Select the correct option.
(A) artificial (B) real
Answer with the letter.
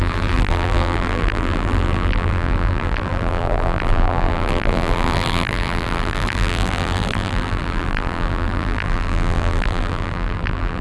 A